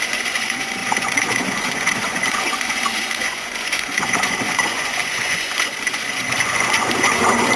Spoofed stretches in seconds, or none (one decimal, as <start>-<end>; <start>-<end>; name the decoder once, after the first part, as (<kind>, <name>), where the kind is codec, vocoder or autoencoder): 0.0-7.6 (vocoder, Vocos)

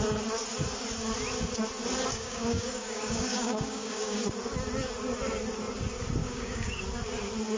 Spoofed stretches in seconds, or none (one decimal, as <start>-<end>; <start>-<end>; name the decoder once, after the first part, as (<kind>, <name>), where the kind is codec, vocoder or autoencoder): 2.1-4.2 (codec, DAC); 6.2-6.8